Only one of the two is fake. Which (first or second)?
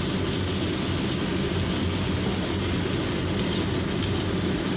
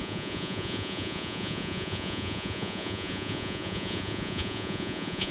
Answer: second